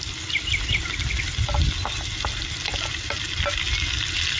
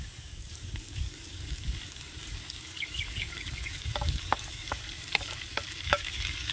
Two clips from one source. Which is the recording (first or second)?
first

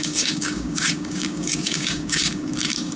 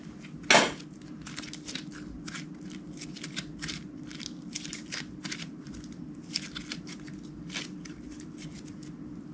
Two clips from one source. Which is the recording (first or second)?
second